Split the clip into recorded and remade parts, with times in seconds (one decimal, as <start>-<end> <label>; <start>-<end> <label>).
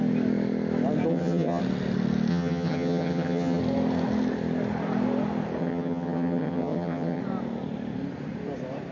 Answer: 0.0-1.1 recorded; 1.1-1.6 remade; 1.6-2.3 recorded; 2.3-3.6 remade; 3.6-5.6 recorded; 5.6-7.2 remade; 7.2-8.9 recorded